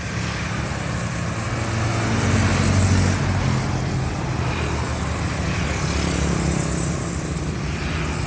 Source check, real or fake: real